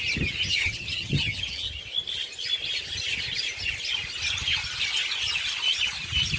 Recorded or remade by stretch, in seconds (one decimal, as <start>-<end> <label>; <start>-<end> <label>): 0.0-0.4 recorded; 0.4-1.8 remade; 1.8-6.4 recorded